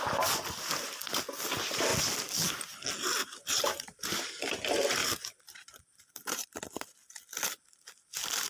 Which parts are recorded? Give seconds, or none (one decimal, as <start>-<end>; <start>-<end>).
0.0-3.2; 4.1-5.0; 6.5-8.5